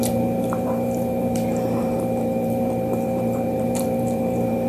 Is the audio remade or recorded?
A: remade